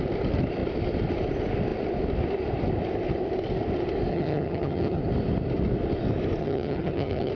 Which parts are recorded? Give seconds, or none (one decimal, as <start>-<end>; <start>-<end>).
0.0-4.1; 5.0-6.4